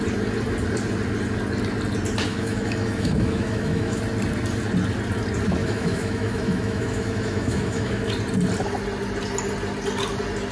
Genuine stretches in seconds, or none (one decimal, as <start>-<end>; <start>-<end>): 0.0-2.3; 4.0-5.6; 8.1-10.5